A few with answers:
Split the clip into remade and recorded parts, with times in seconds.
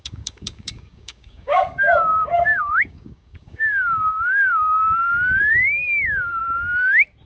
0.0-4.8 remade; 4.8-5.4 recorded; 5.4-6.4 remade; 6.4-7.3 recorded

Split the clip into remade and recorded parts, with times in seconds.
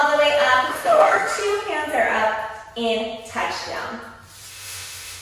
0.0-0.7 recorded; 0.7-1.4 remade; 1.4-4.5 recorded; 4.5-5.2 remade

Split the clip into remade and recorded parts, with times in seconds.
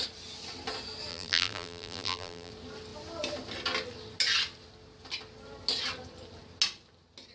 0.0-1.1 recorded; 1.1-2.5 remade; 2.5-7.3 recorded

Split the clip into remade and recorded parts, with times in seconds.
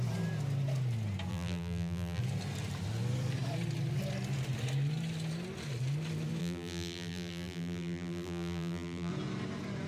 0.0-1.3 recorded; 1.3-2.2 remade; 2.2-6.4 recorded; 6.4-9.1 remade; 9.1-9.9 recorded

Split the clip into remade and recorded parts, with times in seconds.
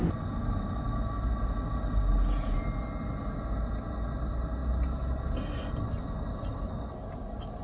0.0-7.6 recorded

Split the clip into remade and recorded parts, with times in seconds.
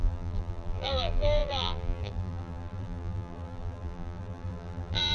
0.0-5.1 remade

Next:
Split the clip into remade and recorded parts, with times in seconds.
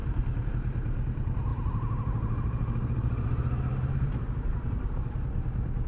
0.0-0.5 remade; 0.5-1.5 recorded; 1.5-4.9 remade; 4.9-5.9 recorded